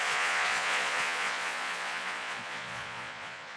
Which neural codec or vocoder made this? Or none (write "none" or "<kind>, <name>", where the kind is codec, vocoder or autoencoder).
vocoder, Vocos